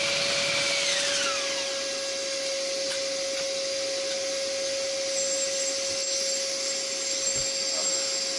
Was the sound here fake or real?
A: real